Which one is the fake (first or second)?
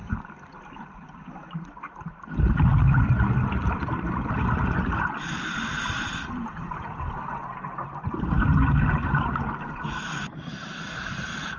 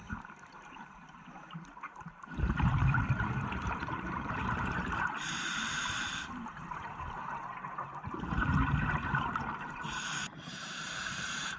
second